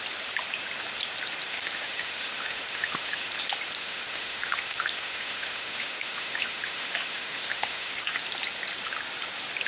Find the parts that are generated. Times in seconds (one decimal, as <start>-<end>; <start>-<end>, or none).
1.5-3.3; 3.8-8.2